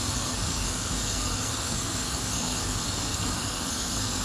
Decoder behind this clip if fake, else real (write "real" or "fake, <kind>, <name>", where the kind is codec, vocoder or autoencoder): fake, codec, SNAC